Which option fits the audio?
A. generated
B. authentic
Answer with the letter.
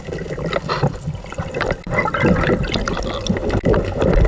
B